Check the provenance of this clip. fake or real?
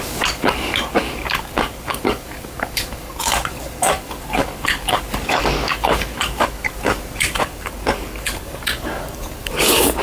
fake